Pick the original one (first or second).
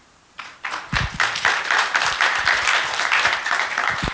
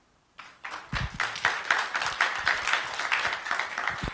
second